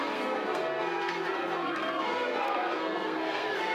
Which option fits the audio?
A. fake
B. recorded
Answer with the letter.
A